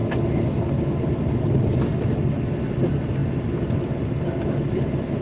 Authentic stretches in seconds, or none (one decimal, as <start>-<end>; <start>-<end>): 0.0-5.2